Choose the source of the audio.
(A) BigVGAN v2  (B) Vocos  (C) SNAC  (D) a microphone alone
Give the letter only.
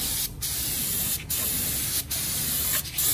D